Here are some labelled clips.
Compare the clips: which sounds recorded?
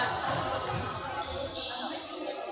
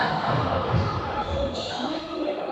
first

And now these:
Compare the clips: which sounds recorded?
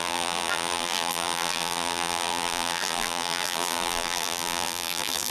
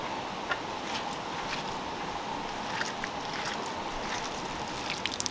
second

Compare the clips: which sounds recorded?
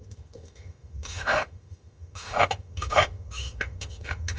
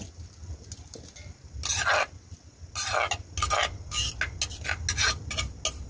second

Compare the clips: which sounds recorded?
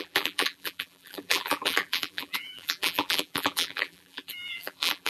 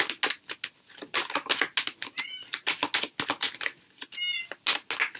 second